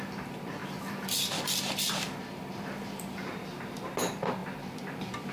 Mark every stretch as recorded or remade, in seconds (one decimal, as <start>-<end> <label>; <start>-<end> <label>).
0.0-5.3 remade